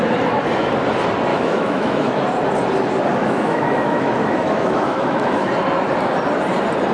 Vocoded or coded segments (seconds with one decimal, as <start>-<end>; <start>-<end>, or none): 1.3-2.2; 3.2-5.5